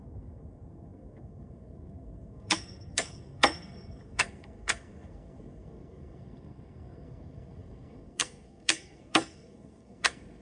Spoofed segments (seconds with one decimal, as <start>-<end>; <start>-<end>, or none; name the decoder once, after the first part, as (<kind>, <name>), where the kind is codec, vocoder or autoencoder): 0.0-10.4 (codec, SNAC)